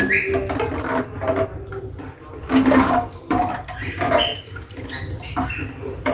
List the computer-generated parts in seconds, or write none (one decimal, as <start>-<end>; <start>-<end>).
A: 2.4-3.2